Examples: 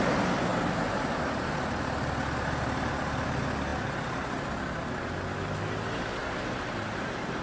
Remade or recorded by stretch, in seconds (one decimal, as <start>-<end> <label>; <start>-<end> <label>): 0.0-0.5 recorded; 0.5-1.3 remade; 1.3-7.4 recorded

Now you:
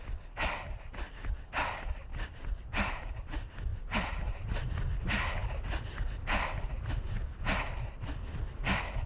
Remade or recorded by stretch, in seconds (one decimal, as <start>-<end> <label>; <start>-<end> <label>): 0.0-2.1 recorded; 2.1-3.2 remade; 3.2-3.7 recorded; 3.7-4.7 remade; 4.7-9.1 recorded

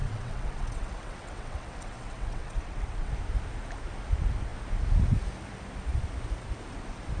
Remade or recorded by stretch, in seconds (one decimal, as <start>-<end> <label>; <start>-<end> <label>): 0.0-3.1 remade; 3.1-7.2 recorded